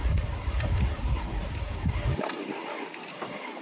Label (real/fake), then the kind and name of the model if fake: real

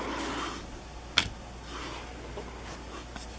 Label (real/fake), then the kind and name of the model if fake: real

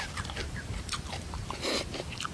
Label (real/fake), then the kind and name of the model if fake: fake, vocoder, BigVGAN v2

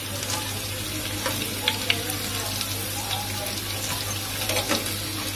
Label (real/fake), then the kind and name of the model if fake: real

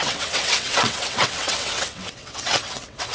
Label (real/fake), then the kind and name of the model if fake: fake, vocoder, WaveNeXt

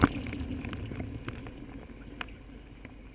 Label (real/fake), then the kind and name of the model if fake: real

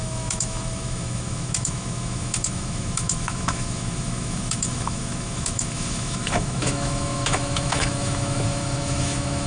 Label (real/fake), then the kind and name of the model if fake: fake, autoencoder, DAC-VAE